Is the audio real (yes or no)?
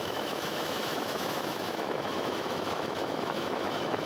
no